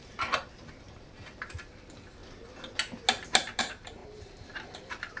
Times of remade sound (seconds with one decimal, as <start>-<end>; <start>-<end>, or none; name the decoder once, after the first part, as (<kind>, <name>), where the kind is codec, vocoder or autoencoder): 1.7-2.2 (vocoder, BigVGAN v2); 3.6-5.2